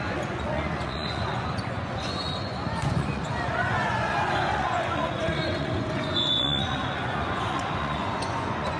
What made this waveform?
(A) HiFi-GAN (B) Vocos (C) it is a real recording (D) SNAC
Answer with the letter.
B